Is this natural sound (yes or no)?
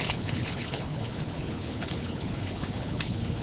no